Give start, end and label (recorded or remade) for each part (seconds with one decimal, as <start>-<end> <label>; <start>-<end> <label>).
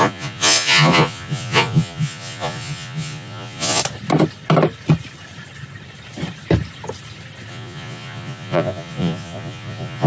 0.0-3.8 remade; 3.8-7.5 recorded; 7.5-10.1 remade